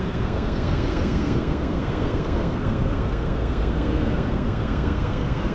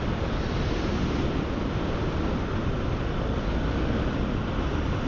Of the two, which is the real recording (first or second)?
second